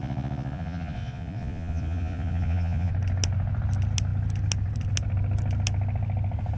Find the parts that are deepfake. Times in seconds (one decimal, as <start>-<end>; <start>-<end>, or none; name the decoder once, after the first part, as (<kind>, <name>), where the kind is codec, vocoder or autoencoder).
0.0-2.9 (vocoder, Vocos)

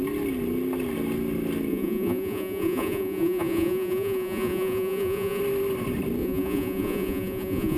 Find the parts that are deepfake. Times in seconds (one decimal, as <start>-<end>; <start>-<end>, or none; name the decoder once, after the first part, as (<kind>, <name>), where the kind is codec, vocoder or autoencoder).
1.7-5.4 (vocoder, Vocos); 6.2-7.8

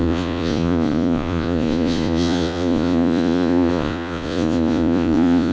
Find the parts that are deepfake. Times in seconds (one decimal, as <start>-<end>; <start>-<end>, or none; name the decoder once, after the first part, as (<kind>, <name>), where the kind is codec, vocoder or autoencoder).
0.0-5.5 (vocoder, Vocos)

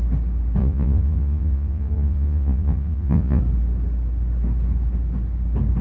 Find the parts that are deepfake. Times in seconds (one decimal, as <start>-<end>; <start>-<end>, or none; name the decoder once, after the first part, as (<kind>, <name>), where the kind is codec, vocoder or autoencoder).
0.6-3.4 (vocoder, Vocos)